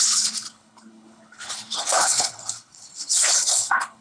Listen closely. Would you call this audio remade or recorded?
remade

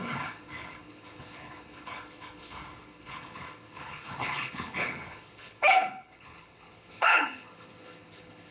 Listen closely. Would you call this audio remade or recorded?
remade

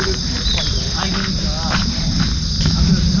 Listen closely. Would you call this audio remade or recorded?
recorded